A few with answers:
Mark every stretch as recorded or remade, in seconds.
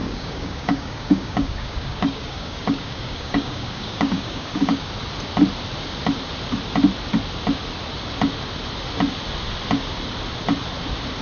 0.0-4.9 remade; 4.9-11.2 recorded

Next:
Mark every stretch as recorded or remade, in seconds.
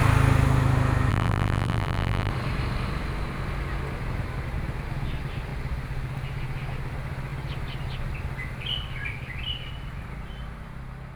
0.0-1.1 recorded; 1.1-2.3 remade; 2.3-11.2 recorded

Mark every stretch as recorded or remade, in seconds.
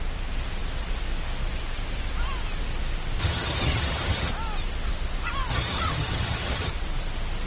0.0-3.2 recorded; 3.2-4.3 remade; 4.3-5.5 recorded; 5.5-6.7 remade; 6.7-7.5 recorded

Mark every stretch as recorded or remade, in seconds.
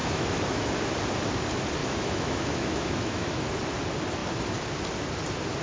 0.0-0.7 remade; 0.7-1.8 recorded; 1.8-3.4 remade; 3.4-5.6 recorded